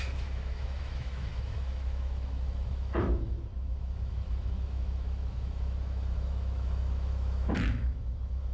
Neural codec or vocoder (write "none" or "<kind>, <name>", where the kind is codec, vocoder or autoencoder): autoencoder, DAC-VAE